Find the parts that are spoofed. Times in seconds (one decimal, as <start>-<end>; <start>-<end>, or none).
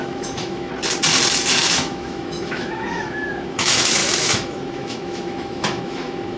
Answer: 0.0-0.7; 1.5-6.4